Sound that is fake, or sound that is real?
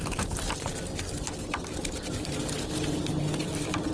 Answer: real